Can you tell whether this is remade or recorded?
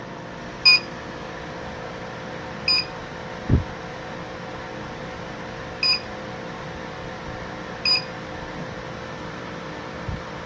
recorded